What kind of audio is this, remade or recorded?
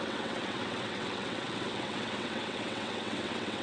remade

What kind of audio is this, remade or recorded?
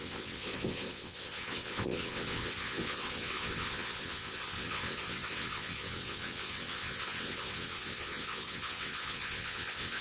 remade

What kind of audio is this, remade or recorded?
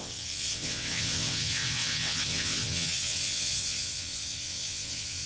remade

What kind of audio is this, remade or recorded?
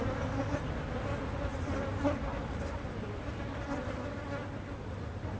recorded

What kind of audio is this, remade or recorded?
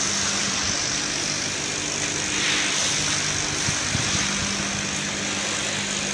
recorded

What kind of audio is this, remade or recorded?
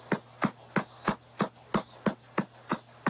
recorded